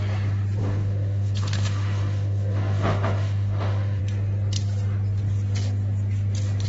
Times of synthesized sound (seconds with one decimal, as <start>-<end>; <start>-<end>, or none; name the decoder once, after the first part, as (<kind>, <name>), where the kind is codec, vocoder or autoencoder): 0.6-4.0 (autoencoder, DAC-VAE)